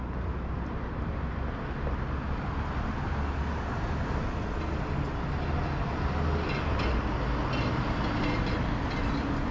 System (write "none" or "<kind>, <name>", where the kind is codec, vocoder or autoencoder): none